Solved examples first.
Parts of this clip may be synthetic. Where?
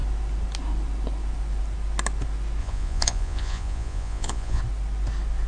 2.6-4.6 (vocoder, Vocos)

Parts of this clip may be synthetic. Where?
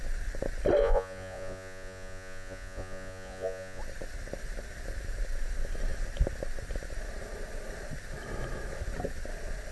0.8-3.8 (vocoder, Vocos)